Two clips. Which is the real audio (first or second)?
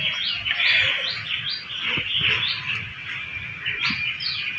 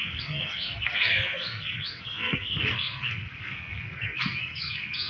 first